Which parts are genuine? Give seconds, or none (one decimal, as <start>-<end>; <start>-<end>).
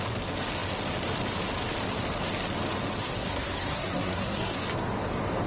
0.0-3.0; 4.6-5.5